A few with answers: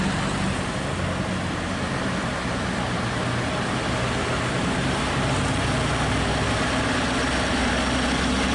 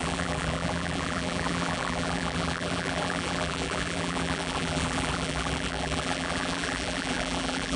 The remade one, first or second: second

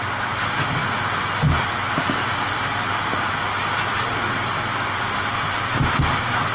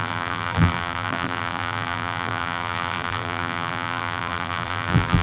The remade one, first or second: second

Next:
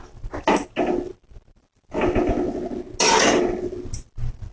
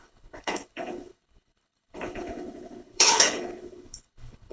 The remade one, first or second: second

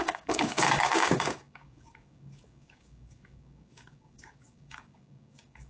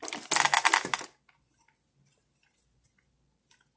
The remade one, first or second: first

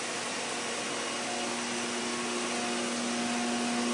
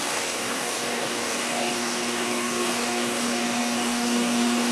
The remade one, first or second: second